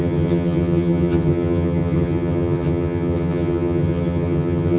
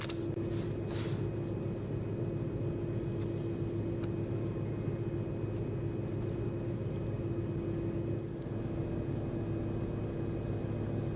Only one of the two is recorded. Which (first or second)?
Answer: second